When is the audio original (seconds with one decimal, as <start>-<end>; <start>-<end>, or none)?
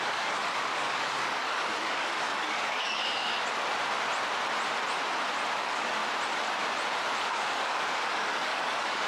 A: 3.3-5.6; 6.0-7.2